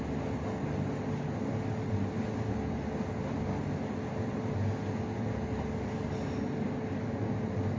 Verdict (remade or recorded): recorded